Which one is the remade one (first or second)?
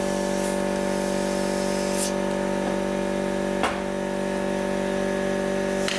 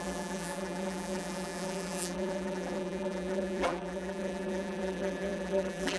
second